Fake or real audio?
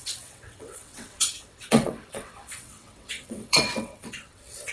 fake